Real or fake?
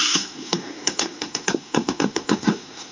fake